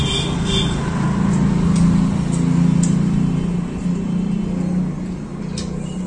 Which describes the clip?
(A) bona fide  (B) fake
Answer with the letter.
A